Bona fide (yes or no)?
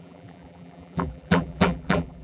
no